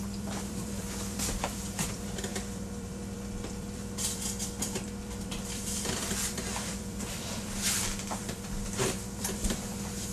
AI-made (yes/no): yes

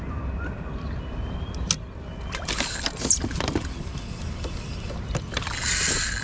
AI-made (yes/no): no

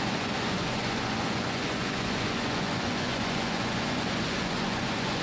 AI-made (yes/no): yes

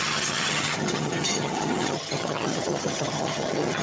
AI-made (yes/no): yes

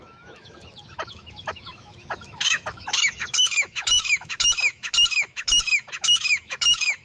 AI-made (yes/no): yes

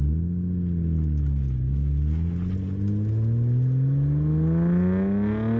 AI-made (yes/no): no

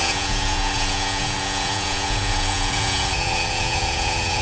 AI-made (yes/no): yes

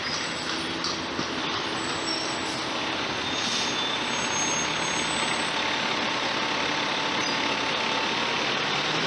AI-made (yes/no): no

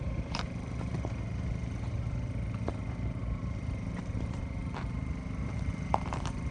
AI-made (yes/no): yes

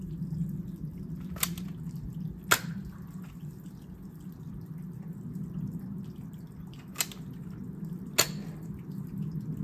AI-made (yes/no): no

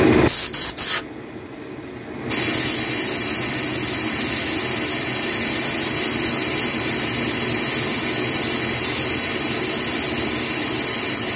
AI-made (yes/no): no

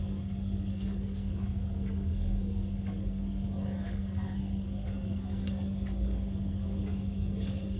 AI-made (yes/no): yes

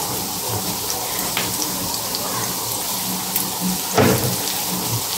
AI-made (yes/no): no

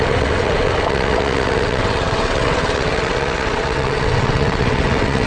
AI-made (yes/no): yes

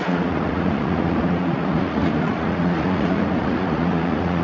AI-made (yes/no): yes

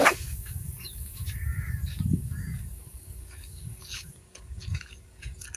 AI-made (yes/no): yes